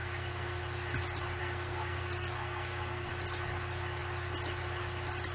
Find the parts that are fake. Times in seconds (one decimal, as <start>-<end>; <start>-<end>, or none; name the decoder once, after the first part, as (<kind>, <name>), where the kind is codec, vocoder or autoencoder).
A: 0.0-0.6 (codec, SNAC); 1.4-3.1